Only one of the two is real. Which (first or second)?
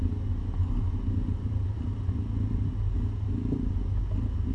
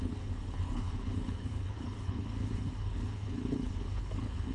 first